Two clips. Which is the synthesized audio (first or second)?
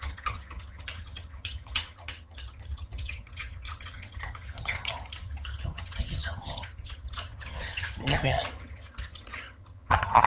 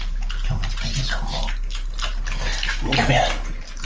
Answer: first